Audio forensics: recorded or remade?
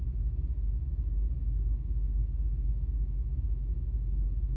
remade